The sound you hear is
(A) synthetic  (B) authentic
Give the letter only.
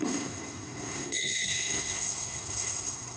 A